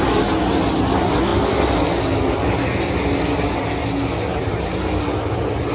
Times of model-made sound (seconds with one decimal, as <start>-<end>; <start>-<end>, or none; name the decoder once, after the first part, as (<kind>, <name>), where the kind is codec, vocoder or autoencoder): none